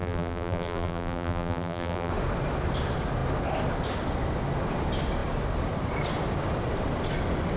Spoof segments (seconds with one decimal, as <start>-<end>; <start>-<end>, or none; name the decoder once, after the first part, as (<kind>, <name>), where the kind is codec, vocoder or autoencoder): 0.0-2.1 (vocoder, BigVGAN v2)